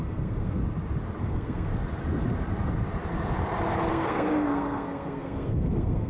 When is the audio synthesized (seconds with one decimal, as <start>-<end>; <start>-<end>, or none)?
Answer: 0.0-0.6; 1.2-1.7; 3.9-6.1